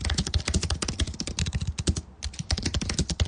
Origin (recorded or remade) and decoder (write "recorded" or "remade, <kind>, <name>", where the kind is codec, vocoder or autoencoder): recorded